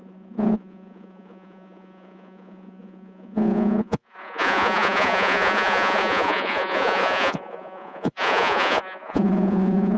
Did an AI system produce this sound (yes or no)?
yes